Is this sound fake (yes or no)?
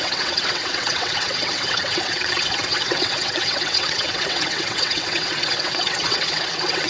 yes